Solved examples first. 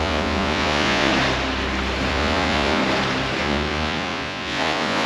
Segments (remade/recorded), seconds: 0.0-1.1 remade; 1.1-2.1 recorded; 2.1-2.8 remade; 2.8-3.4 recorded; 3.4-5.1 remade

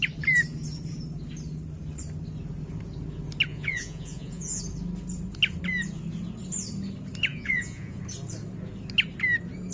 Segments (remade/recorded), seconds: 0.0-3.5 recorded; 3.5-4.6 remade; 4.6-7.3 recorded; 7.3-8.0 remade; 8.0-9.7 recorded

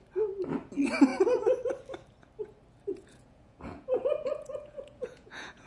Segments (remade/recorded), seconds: 0.0-2.9 recorded; 2.9-5.7 remade

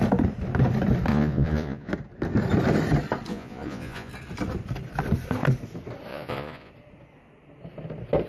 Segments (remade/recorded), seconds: 0.0-1.1 recorded; 1.1-1.9 remade; 1.9-3.3 recorded; 3.3-4.1 remade; 4.1-6.1 recorded; 6.1-6.7 remade; 6.7-8.3 recorded

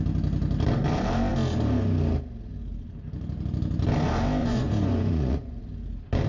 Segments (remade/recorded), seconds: 0.0-4.4 recorded; 4.4-5.6 remade; 5.6-6.3 recorded